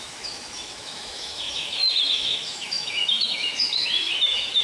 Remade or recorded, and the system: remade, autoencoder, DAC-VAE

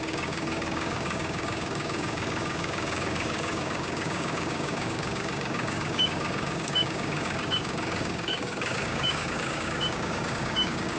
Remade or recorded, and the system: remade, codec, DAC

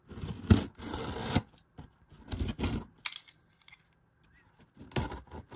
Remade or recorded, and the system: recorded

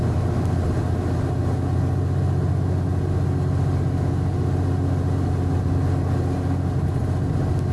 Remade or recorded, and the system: recorded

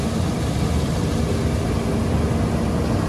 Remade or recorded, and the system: recorded